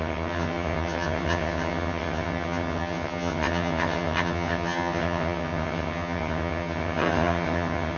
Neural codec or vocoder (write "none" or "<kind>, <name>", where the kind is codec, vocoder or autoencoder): vocoder, HiFi-GAN